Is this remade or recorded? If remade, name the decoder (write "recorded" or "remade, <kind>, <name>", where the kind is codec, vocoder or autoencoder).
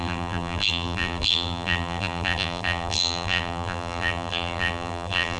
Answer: remade, vocoder, BigVGAN v2